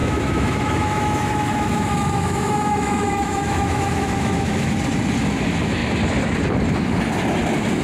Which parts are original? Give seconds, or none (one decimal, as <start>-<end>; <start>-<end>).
4.7-7.8